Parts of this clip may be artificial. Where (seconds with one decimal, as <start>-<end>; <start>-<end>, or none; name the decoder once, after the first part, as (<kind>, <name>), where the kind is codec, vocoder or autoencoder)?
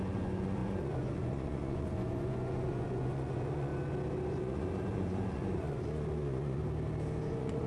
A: 0.0-3.7 (vocoder, Vocos); 4.4-6.6; 7.3-7.7